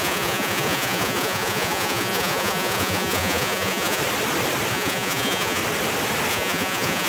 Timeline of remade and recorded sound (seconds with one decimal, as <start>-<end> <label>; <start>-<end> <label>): 0.0-4.0 remade; 4.0-4.7 recorded; 4.7-5.6 remade; 5.6-6.3 recorded; 6.3-7.1 remade